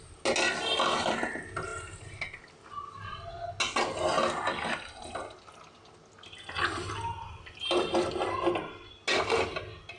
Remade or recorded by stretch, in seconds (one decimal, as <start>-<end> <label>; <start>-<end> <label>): 0.0-10.0 recorded